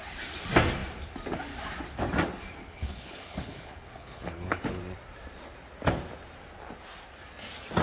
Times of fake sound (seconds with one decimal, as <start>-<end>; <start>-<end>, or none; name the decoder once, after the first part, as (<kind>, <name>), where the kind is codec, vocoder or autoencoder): 2.6-4.8 (codec, HILCodec)